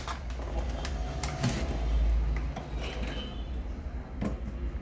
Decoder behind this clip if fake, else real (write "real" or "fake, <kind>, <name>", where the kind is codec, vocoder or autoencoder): real